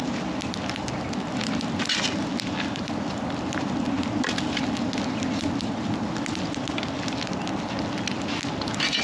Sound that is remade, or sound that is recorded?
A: recorded